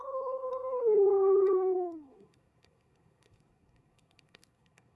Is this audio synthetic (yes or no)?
yes